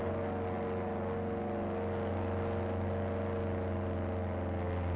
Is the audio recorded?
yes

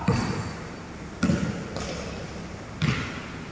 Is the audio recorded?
yes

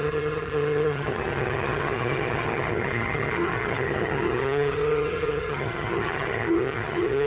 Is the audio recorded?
no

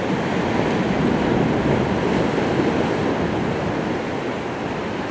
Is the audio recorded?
yes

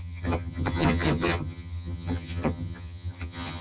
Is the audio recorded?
no